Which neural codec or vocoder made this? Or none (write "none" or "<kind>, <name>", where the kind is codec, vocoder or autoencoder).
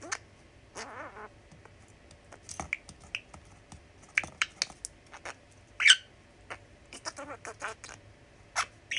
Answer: none